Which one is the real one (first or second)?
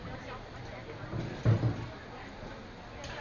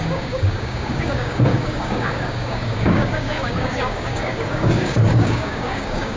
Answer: first